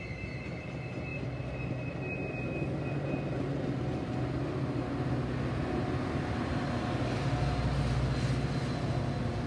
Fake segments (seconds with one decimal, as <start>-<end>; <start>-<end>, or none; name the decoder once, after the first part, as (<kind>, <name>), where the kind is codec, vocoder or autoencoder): none